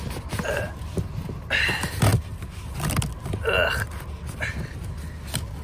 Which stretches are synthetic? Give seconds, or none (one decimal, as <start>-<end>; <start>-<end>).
none